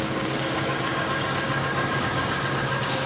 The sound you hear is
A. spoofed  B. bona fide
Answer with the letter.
A